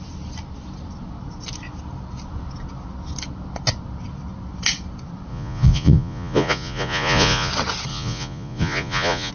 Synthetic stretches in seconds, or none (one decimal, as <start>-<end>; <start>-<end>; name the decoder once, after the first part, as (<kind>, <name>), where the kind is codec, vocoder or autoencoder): 5.3-7.5 (vocoder, Vocos); 7.9-9.3